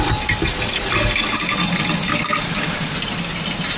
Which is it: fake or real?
real